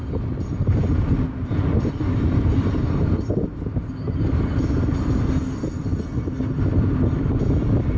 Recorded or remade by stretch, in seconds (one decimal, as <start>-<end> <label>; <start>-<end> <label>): 0.0-8.0 recorded

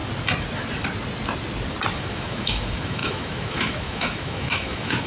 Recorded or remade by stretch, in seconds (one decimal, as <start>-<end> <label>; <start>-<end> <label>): 0.0-1.9 recorded; 1.9-5.1 remade

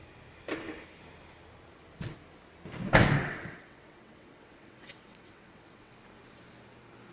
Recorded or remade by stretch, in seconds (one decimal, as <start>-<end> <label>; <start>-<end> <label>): 0.0-3.2 recorded; 3.2-5.9 remade; 5.9-7.1 recorded

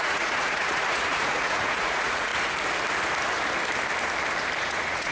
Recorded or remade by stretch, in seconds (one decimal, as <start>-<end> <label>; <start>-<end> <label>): 0.0-2.3 remade; 2.3-4.6 recorded; 4.6-5.1 remade

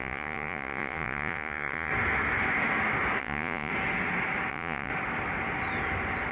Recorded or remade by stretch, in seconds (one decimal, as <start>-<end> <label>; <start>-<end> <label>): 0.0-1.9 remade; 1.9-3.2 recorded; 3.2-3.7 remade; 3.7-4.5 recorded; 4.5-4.9 remade; 4.9-6.3 recorded

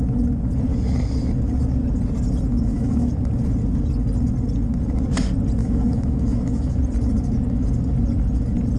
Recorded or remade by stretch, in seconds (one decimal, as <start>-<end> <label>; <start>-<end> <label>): 0.0-2.5 recorded; 2.5-3.1 remade; 3.1-5.6 recorded; 5.6-6.8 remade; 6.8-8.8 recorded